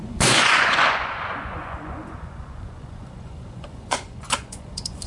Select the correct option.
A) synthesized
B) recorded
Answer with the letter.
A